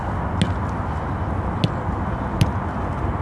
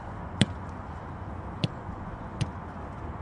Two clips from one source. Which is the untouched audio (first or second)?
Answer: first